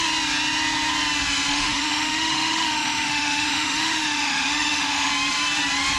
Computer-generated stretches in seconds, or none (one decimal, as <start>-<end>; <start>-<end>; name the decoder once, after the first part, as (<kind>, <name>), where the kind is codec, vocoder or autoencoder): 1.5-5.1 (autoencoder, DAC-VAE)